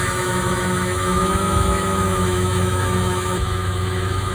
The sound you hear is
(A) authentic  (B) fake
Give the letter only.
B